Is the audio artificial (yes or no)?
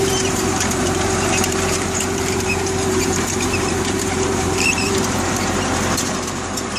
yes